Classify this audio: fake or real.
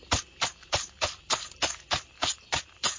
fake